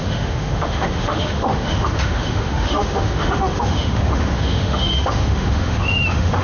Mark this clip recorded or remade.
remade